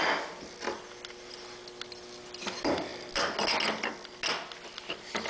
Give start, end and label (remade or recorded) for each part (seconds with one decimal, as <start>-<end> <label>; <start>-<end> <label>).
0.0-5.3 recorded